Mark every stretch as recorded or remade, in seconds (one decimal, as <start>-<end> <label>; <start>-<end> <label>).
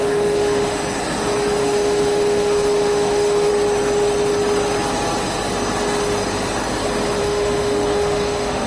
0.0-0.8 remade; 0.8-1.6 recorded; 1.6-3.5 remade; 3.5-7.2 recorded; 7.2-8.7 remade